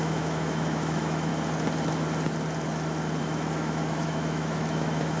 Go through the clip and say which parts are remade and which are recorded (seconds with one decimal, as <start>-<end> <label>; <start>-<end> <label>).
0.0-1.3 remade; 1.3-3.2 recorded; 3.2-5.2 remade